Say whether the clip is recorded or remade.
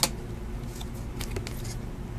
recorded